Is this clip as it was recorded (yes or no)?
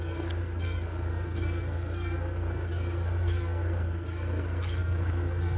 no